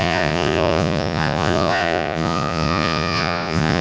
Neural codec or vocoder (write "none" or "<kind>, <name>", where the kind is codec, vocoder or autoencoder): vocoder, Vocos